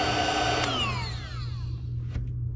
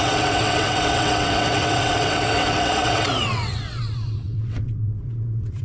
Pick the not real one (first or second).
second